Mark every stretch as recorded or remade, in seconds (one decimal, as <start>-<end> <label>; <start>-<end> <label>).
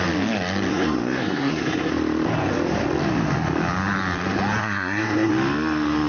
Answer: 0.0-0.7 recorded; 0.7-1.9 remade; 1.9-4.6 recorded; 4.6-5.3 remade; 5.3-6.1 recorded